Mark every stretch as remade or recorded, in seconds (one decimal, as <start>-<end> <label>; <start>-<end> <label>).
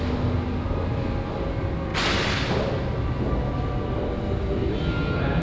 0.0-5.4 recorded